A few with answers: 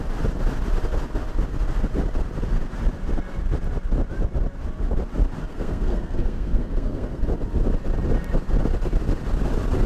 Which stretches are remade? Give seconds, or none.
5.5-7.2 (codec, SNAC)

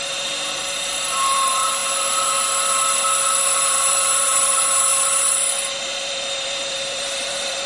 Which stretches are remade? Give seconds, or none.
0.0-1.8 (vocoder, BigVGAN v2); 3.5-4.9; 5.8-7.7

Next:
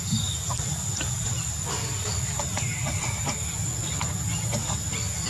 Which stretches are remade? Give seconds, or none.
none

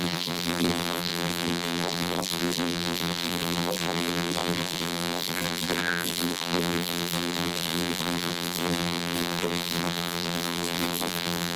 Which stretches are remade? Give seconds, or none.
0.0-11.6 (vocoder, BigVGAN v2)